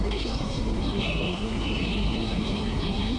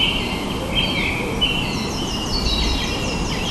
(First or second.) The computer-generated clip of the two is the first